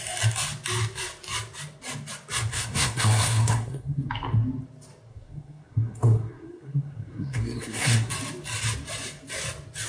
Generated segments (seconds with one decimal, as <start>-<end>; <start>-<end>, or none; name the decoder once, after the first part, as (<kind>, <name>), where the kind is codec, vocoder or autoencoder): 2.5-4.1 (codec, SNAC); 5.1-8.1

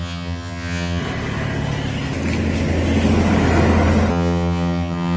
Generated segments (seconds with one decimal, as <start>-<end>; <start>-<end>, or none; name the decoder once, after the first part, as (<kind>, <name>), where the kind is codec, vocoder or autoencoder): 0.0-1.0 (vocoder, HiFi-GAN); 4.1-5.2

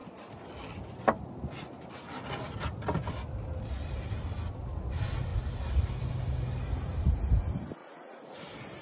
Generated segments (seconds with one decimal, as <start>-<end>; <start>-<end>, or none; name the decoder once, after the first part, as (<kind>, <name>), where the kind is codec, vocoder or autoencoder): 7.8-8.4 (vocoder, Vocos)

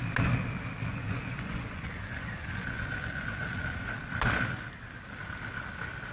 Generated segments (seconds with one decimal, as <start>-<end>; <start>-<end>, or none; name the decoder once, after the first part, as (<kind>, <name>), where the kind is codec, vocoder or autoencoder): 0.9-3.9 (vocoder, Vocos)

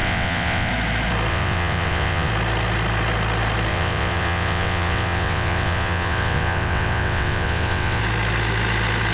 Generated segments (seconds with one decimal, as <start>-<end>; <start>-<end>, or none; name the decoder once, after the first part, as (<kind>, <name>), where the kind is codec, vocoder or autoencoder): 0.0-0.7 (vocoder, WaveNeXt); 1.3-2.3; 3.7-8.0

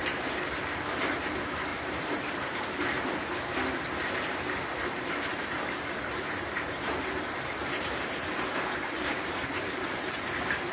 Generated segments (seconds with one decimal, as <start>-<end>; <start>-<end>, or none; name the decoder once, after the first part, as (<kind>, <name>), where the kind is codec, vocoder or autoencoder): 1.7-2.6 (vocoder, BigVGAN v2); 5.3-10.2

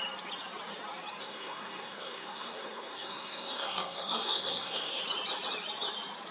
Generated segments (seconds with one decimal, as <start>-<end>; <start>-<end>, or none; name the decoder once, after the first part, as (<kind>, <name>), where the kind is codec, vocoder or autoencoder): 1.2-5.0 (codec, SNAC)